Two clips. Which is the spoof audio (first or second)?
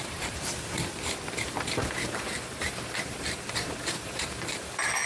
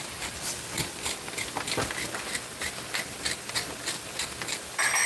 first